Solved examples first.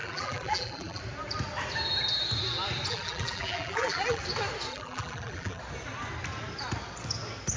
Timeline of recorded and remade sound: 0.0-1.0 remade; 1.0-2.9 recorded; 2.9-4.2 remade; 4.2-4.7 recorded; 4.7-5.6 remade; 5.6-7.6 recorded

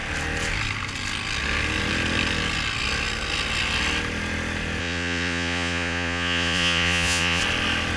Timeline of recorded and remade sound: 0.0-4.8 recorded; 4.8-7.4 remade; 7.4-8.0 recorded

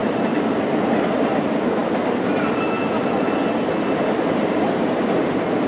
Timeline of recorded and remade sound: 0.0-5.7 recorded

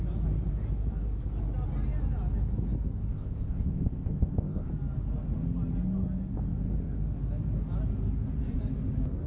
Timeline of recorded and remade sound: 0.0-3.1 recorded; 3.1-4.7 remade; 4.7-9.3 recorded